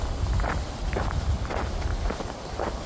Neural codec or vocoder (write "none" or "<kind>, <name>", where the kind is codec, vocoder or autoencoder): vocoder, BigVGAN v2